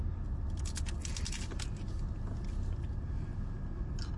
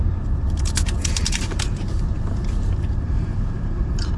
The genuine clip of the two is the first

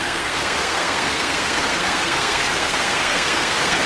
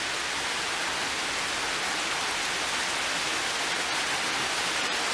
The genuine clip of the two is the second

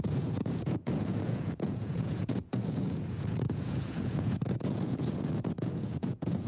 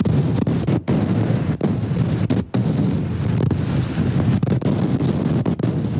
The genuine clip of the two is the second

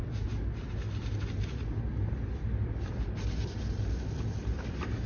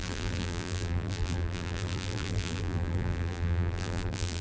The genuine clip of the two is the first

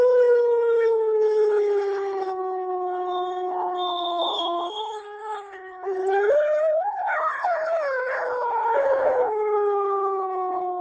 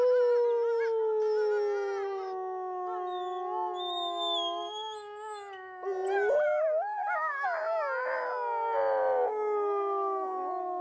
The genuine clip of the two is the second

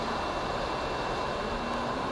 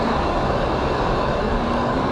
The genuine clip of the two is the first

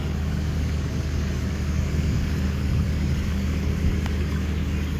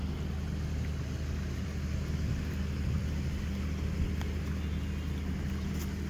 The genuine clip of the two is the second